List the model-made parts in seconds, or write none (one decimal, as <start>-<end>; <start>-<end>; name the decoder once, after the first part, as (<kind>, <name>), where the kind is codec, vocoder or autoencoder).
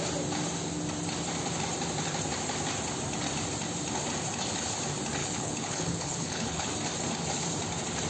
5.2-6.7 (codec, HILCodec)